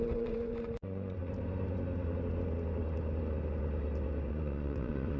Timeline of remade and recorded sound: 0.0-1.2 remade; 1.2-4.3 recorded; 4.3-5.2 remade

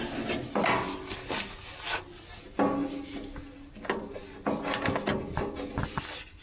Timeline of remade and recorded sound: 0.0-6.4 recorded

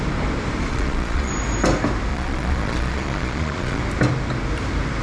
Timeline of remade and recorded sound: 0.0-0.7 recorded; 0.7-1.3 remade; 1.3-2.1 recorded; 2.1-3.8 remade; 3.8-5.0 recorded

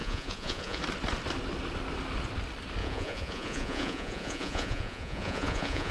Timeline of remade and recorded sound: 0.0-0.8 remade; 0.8-2.8 recorded; 2.8-5.9 remade

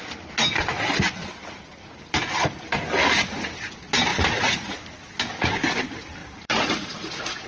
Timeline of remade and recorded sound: 0.0-4.1 recorded; 4.1-4.7 remade; 4.7-6.2 recorded; 6.2-7.5 remade

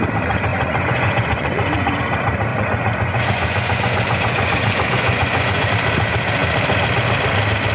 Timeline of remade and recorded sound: 0.0-0.5 recorded; 0.5-2.0 remade; 2.0-2.5 recorded; 2.5-5.7 remade; 5.7-7.7 recorded